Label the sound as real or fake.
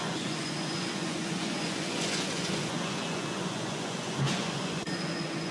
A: fake